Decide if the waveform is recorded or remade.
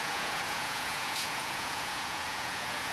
remade